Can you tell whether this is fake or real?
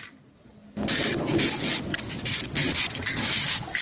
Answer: real